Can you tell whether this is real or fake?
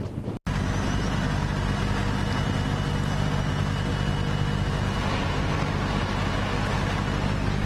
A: real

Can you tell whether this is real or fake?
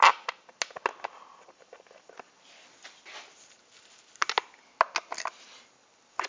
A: real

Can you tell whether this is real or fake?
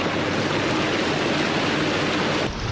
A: real